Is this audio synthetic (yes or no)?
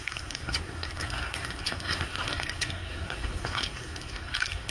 yes